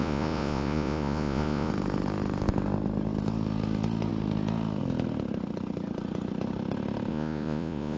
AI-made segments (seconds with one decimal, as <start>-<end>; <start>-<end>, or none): 0.0-1.7; 7.1-8.0